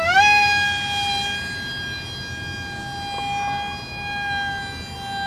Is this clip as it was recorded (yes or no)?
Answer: yes